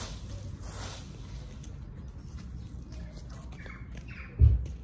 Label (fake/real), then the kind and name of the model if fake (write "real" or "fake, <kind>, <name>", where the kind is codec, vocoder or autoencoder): real